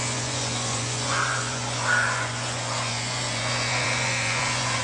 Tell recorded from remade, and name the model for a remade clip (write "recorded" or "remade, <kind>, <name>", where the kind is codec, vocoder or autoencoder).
remade, vocoder, Vocos